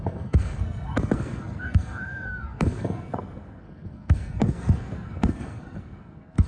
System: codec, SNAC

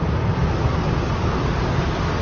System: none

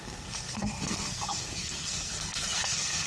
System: codec, SNAC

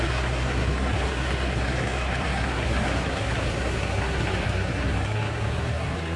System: codec, SNAC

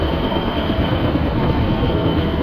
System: codec, SNAC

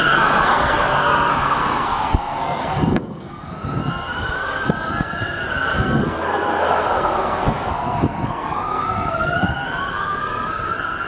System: codec, SNAC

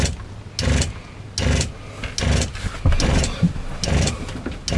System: none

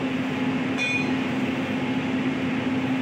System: none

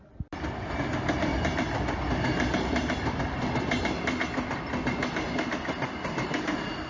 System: none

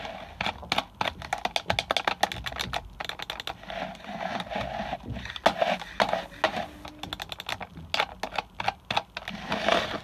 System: none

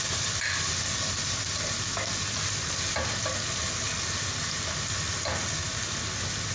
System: none